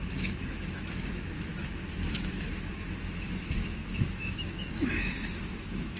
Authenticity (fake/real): fake